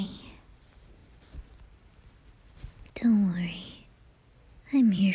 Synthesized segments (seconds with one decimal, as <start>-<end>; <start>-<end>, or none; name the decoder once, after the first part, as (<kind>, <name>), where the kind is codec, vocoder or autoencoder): 0.0-5.1 (vocoder, BigVGAN v2)